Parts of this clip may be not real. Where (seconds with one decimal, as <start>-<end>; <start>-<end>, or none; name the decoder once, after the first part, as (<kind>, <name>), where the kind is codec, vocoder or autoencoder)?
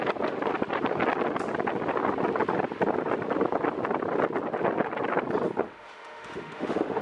5.6-7.0 (autoencoder, DAC-VAE)